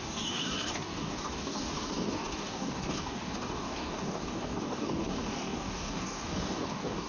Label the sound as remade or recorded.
remade